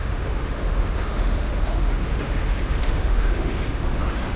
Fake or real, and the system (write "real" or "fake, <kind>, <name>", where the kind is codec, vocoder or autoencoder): fake, autoencoder, DAC-VAE